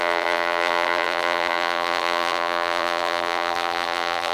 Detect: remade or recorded remade